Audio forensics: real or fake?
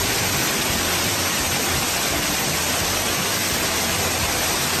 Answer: real